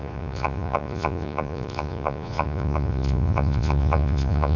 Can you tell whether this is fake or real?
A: fake